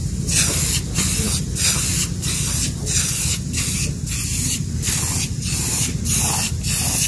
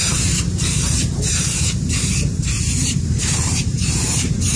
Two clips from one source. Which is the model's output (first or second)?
second